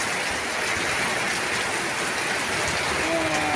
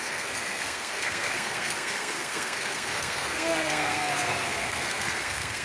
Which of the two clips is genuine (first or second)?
first